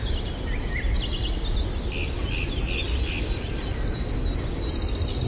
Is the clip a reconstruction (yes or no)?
no